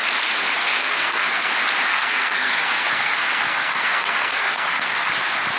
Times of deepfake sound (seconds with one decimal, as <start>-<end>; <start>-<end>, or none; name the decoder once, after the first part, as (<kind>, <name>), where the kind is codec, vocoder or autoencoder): 0.6-1.5 (codec, SNAC); 1.9-5.1

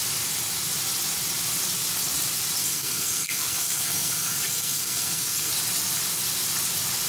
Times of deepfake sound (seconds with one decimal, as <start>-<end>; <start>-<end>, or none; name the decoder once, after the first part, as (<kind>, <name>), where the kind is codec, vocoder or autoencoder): 2.6-5.5 (codec, SNAC)

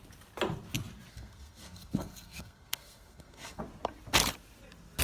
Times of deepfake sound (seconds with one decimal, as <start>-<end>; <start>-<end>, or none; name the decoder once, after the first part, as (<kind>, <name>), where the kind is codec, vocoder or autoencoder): 1.1-3.6 (codec, SNAC)